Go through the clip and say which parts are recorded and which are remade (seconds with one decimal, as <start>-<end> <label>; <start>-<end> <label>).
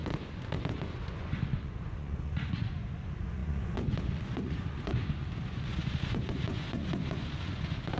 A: 0.0-8.0 remade